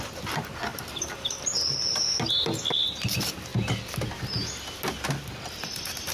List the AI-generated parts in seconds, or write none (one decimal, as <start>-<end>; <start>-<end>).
none